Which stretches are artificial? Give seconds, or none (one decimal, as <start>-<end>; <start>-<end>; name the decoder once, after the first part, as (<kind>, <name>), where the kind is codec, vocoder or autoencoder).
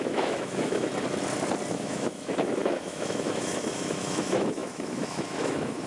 0.0-0.9 (autoencoder, DAC-VAE); 1.7-5.9